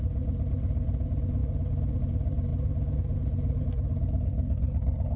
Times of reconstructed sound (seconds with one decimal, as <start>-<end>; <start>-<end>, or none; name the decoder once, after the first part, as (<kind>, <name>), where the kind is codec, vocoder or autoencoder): none